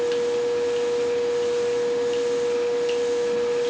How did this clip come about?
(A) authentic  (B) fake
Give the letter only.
A